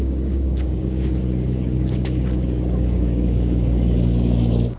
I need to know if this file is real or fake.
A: fake